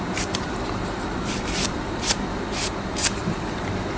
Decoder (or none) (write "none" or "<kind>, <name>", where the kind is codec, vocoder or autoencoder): vocoder, BigVGAN v2